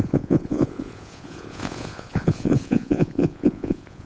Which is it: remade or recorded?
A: remade